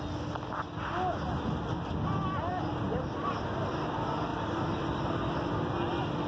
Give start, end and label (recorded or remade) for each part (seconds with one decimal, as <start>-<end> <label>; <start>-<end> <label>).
0.0-2.5 recorded; 2.5-3.1 remade; 3.1-4.3 recorded; 4.3-4.9 remade; 4.9-6.3 recorded